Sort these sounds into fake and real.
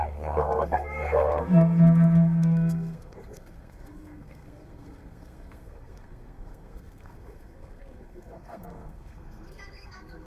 fake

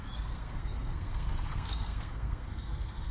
fake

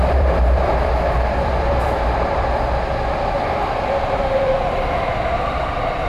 fake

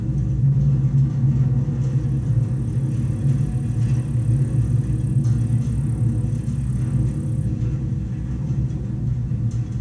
real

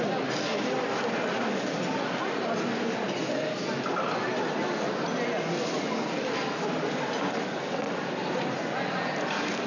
real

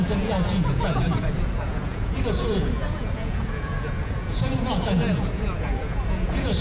fake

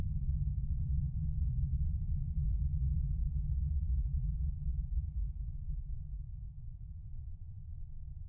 fake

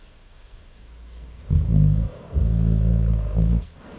fake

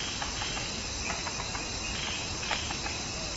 real